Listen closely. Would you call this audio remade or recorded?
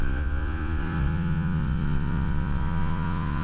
remade